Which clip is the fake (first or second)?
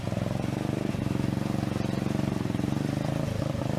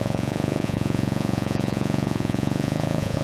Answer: second